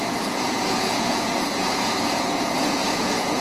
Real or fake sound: fake